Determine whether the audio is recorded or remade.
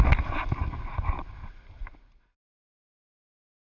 recorded